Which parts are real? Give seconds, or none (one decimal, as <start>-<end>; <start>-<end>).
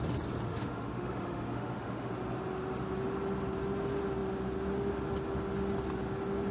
0.0-0.5; 2.1-6.5